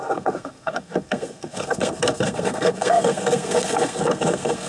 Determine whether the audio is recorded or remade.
remade